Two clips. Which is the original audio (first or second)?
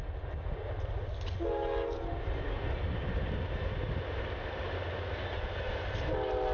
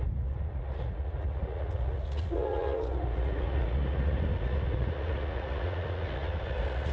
first